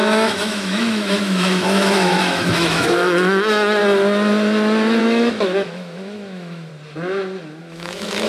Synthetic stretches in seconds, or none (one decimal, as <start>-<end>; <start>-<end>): 0.0-3.8; 5.0-6.7; 7.6-8.3